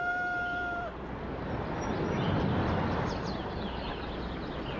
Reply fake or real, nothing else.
real